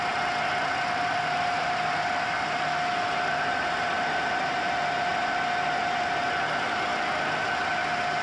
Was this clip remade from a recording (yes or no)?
no